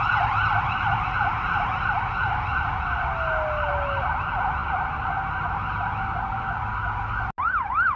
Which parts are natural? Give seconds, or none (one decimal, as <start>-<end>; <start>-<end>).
0.0-8.0